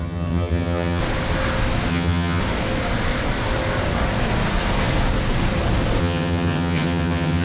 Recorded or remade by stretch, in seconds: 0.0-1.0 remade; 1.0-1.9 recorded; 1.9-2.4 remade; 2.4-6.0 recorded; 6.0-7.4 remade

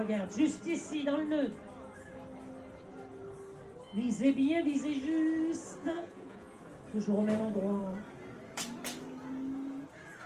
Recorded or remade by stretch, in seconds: 0.0-5.8 recorded; 5.8-6.6 remade; 6.6-10.3 recorded

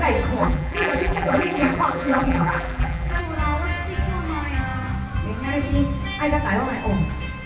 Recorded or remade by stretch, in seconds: 0.0-0.4 recorded; 0.4-3.2 remade; 3.2-7.5 recorded

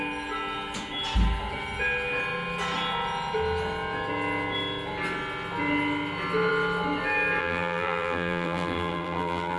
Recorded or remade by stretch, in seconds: 0.0-7.4 recorded; 7.4-9.6 remade

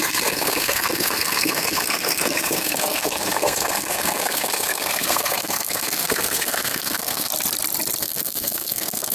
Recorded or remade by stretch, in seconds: 0.0-7.3 remade; 7.3-8.0 recorded; 8.0-9.1 remade